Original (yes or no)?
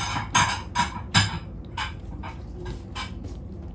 yes